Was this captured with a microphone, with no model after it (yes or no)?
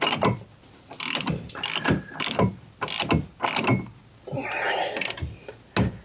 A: yes